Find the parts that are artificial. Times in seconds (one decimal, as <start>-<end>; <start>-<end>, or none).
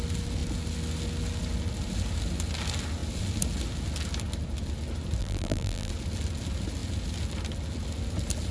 5.2-5.9